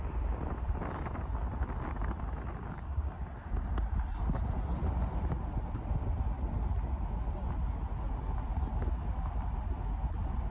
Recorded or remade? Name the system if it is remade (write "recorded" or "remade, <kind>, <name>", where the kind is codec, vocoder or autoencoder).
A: recorded